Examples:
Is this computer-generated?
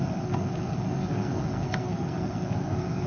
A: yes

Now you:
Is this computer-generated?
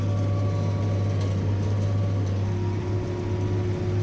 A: no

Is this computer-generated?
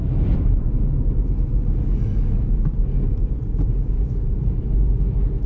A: no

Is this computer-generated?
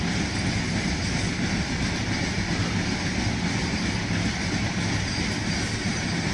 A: no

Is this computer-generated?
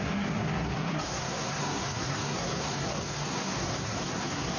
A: yes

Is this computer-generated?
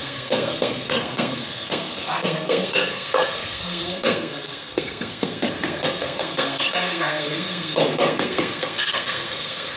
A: yes